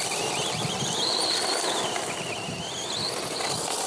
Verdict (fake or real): real